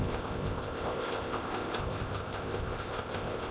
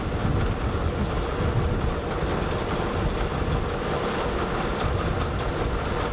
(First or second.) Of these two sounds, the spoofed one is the first